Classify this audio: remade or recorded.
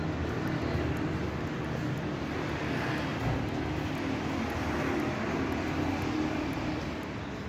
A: recorded